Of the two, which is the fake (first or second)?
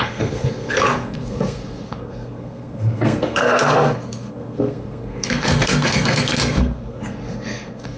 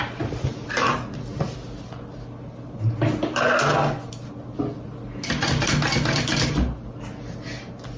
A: first